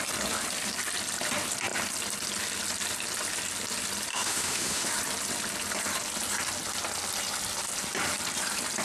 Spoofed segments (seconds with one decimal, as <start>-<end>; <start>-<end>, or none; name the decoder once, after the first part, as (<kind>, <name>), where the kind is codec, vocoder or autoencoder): 4.1-4.9 (autoencoder, DAC-VAE)

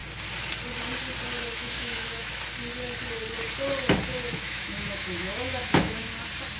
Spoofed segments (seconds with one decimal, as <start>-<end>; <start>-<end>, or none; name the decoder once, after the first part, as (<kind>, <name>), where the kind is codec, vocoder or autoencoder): 1.6-2.3 (autoencoder, DAC-VAE); 4.1-6.1

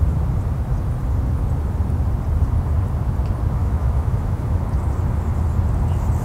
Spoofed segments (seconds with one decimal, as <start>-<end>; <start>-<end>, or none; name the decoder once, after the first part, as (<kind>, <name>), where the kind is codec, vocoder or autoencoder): 3.6-4.6 (autoencoder, DAC-VAE)